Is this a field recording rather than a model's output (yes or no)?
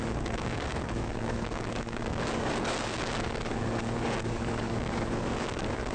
no